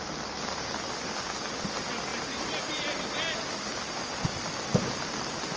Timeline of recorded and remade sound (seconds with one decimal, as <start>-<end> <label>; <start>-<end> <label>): 0.0-2.1 recorded; 2.1-3.4 remade; 3.4-5.6 recorded